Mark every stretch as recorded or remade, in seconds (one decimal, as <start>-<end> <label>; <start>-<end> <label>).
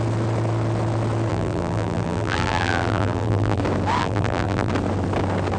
0.0-1.3 recorded; 1.3-3.6 remade; 3.6-4.0 recorded; 4.0-4.7 remade; 4.7-5.6 recorded